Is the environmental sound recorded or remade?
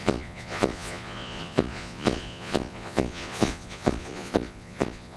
remade